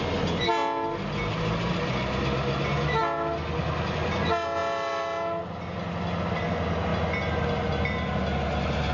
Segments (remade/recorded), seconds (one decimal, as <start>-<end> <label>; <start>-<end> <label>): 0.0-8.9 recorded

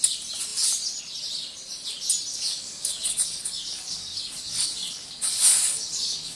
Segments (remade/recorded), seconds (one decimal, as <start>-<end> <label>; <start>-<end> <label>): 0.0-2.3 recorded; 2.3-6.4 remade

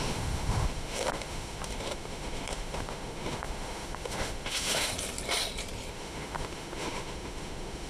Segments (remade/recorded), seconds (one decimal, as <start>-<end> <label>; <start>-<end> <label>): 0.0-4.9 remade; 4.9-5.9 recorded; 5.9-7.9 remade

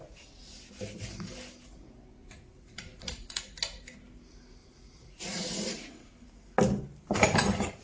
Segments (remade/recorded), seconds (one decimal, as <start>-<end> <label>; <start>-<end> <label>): 0.0-2.2 recorded; 2.2-3.4 remade; 3.4-4.6 recorded; 4.6-6.1 remade; 6.1-7.8 recorded

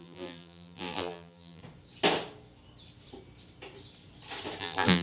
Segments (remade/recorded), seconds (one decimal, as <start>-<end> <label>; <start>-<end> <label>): 0.0-1.6 remade; 1.6-4.6 recorded; 4.6-5.0 remade

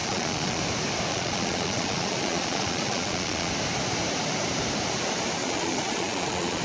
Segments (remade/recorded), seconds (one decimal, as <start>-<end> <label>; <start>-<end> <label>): 0.0-0.6 remade; 0.6-1.1 recorded; 1.1-3.5 remade; 3.5-5.4 recorded; 5.4-6.6 remade

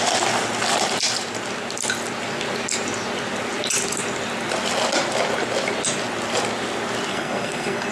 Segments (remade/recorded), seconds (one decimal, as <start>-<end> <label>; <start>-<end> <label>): 0.0-7.1 recorded; 7.1-7.9 remade

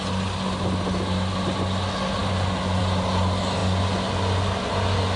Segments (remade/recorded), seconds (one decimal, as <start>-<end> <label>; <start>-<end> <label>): 0.0-5.2 recorded